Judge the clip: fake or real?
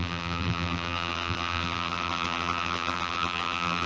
fake